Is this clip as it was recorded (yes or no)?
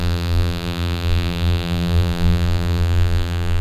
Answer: no